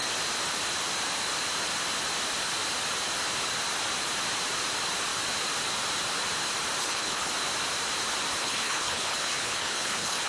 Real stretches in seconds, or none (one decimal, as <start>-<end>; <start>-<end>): 0.0-6.8; 7.3-8.4